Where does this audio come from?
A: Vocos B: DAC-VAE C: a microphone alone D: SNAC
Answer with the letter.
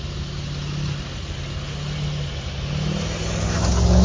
C